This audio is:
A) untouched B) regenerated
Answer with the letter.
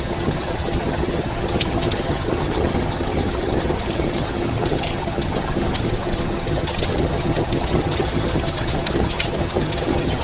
B